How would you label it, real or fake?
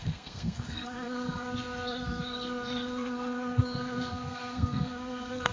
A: fake